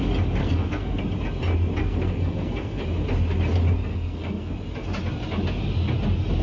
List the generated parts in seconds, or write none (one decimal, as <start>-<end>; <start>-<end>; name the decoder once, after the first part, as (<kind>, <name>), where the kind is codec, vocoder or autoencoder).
0.4-1.0 (codec, SNAC); 1.8-2.8; 3.9-4.5